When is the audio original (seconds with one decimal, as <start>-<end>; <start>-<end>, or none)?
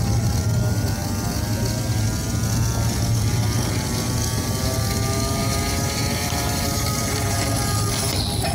0.0-5.4; 7.4-8.5